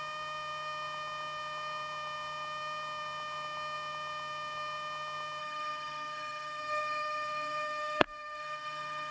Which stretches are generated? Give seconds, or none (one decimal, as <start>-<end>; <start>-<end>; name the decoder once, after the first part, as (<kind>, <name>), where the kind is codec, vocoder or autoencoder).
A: 5.4-9.1 (codec, SNAC)